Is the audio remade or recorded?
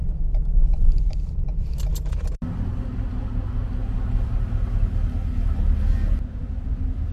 recorded